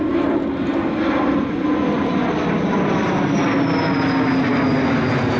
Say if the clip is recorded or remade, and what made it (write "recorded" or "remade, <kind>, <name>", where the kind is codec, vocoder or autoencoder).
recorded